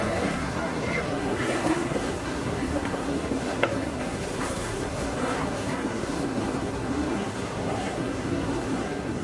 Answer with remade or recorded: remade